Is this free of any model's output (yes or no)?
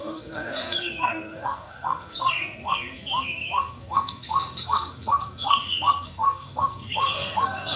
no